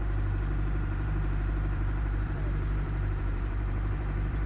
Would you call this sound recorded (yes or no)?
no